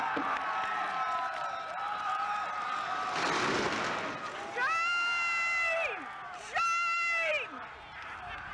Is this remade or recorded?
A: recorded